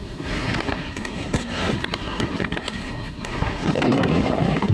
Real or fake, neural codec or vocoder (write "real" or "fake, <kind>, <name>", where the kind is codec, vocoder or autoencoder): fake, codec, SNAC